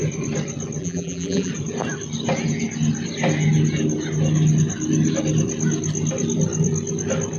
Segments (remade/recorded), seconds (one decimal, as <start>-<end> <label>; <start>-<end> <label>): 0.0-0.8 recorded; 0.8-1.5 remade; 1.5-7.4 recorded